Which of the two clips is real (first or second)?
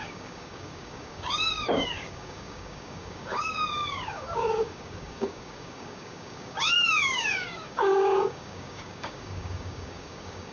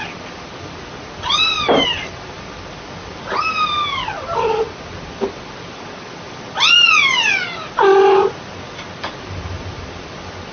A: second